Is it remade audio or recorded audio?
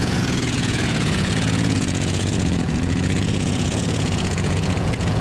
remade